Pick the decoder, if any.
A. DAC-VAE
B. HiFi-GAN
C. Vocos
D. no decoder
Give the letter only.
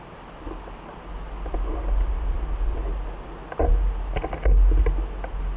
D